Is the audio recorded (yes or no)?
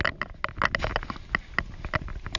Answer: yes